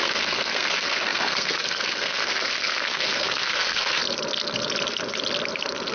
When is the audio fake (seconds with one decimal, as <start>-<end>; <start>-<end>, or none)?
0.0-4.0